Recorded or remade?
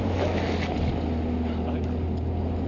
recorded